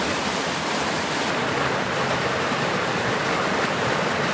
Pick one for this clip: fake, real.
fake